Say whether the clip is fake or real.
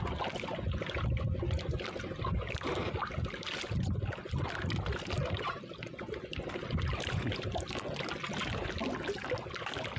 real